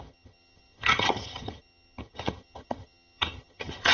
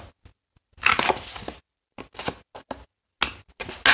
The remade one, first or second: first